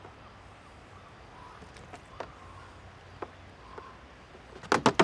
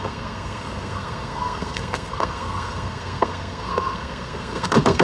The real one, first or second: first